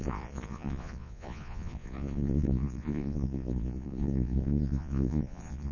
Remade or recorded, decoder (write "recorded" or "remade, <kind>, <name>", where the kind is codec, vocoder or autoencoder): remade, vocoder, Vocos